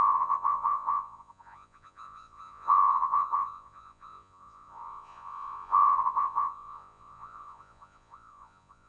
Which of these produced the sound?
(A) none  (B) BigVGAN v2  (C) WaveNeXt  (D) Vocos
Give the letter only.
D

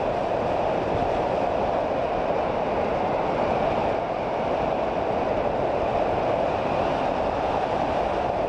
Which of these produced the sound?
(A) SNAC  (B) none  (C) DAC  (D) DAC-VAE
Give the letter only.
B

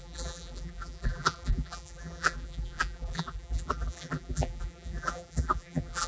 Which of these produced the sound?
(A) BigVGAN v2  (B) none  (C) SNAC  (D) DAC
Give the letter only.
A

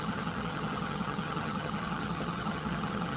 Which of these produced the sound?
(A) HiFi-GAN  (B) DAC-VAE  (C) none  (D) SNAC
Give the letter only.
A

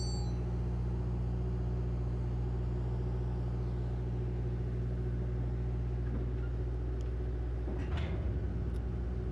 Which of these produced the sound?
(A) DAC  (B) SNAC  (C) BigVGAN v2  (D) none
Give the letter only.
D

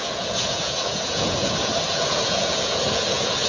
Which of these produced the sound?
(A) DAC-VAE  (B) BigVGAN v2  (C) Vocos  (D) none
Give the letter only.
C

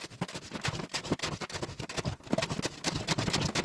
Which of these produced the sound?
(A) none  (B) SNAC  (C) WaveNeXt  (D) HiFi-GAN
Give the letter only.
A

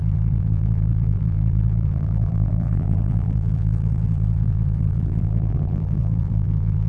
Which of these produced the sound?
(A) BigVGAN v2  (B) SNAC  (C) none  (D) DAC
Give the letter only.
A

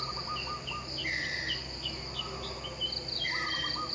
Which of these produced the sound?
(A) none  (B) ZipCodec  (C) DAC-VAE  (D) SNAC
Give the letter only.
A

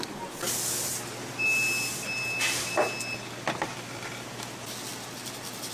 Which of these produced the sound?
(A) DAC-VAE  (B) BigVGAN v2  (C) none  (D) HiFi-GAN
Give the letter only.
C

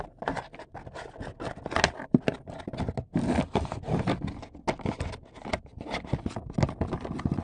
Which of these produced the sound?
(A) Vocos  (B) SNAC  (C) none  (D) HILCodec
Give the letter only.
C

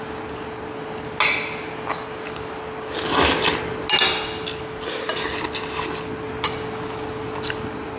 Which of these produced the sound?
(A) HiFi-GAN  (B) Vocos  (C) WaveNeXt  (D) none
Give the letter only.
D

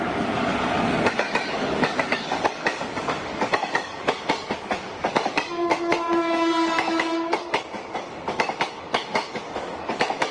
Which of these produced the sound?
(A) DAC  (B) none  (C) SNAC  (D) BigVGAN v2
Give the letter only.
A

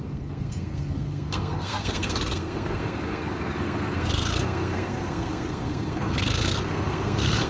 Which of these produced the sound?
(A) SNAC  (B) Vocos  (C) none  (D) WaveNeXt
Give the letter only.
A